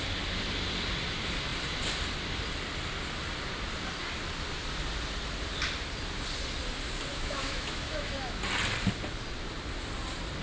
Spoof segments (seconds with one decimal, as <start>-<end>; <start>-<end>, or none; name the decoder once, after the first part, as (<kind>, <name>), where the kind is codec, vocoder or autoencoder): 7.1-8.4 (autoencoder, DAC-VAE)